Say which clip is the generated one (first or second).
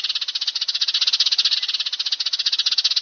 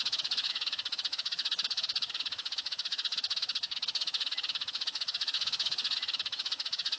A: second